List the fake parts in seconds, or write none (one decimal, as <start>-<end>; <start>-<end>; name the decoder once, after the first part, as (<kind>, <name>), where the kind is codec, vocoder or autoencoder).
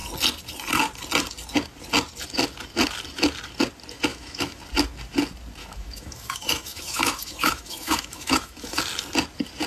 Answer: 4.1-4.6 (autoencoder, DAC-VAE); 5.6-8.8